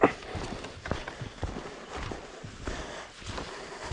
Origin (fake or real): real